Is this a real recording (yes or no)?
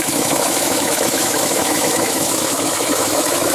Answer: no